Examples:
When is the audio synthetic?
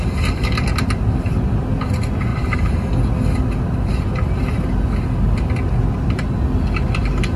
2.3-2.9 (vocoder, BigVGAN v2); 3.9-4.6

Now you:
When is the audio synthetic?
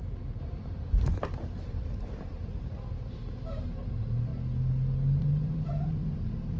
0.0-4.3 (vocoder, BigVGAN v2); 5.2-6.6